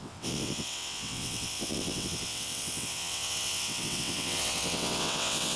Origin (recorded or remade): remade